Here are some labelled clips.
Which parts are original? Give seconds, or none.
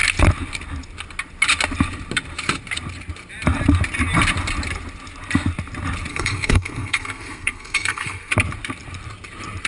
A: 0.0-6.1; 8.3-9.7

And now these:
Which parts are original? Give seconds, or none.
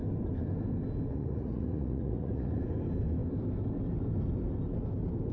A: 0.0-1.1; 2.6-5.3